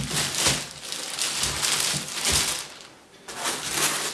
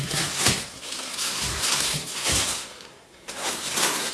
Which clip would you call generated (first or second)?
second